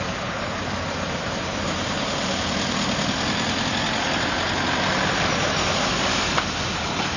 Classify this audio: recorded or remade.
recorded